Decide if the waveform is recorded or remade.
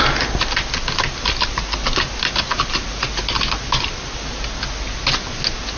recorded